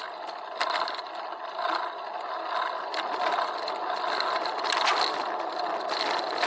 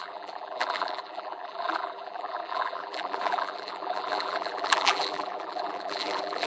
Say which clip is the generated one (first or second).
second